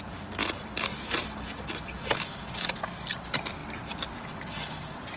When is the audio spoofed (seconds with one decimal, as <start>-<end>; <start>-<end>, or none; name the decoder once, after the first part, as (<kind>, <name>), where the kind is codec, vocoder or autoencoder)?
none